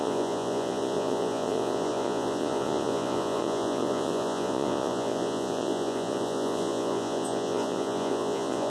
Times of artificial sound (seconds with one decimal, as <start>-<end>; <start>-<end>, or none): 0.0-8.7